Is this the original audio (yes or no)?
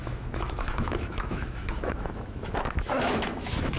no